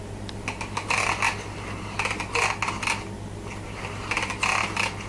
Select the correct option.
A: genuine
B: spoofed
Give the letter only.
A